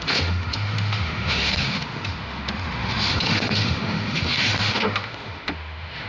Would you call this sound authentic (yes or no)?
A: no